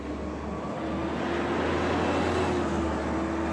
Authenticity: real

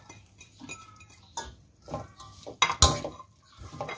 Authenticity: real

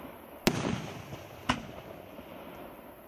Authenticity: real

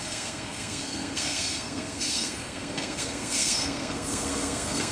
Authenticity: fake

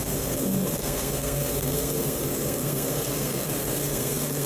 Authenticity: fake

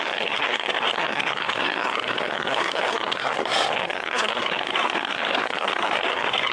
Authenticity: fake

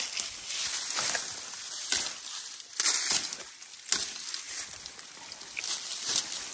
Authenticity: real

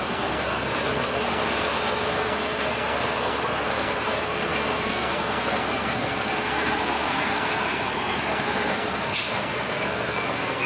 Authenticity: fake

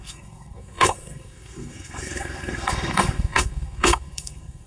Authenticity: fake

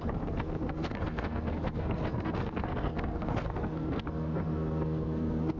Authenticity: fake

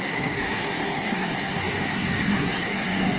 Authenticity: fake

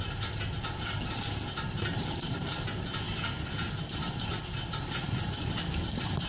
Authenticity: real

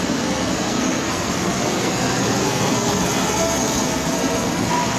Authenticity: fake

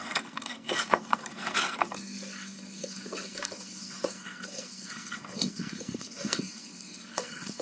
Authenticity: fake